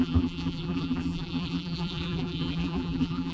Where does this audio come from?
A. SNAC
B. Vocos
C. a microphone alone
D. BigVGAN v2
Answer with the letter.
D